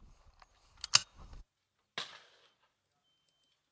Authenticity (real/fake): real